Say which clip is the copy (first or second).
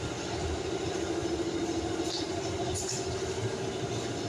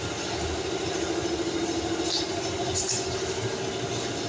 first